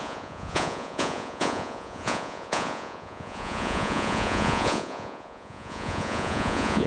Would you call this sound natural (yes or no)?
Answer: no